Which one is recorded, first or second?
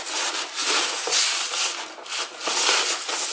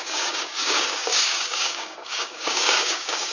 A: first